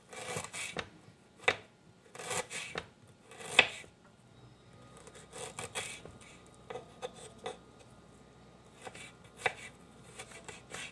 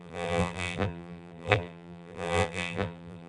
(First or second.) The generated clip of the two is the second